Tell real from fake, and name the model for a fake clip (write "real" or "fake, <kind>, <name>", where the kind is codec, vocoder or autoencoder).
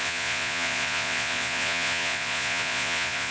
fake, vocoder, Vocos